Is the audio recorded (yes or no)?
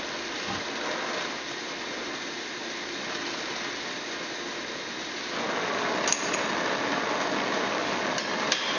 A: yes